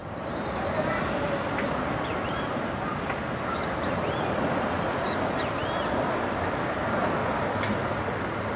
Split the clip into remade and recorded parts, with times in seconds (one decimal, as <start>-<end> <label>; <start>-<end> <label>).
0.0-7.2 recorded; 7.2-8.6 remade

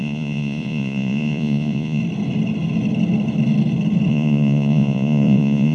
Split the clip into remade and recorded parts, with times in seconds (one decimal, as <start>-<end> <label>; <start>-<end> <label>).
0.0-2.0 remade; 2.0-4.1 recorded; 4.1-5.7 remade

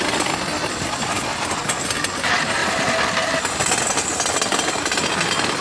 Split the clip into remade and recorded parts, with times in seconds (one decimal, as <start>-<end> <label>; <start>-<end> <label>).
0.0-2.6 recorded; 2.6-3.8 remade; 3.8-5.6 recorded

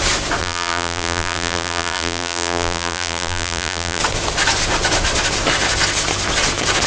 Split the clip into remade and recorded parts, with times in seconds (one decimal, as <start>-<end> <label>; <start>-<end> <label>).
0.0-0.4 recorded; 0.4-4.0 remade; 4.0-6.9 recorded

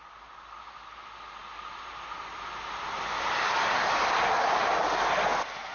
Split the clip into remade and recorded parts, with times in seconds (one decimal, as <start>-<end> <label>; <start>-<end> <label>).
0.0-5.7 recorded